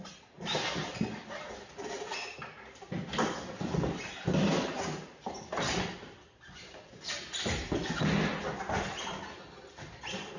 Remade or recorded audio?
recorded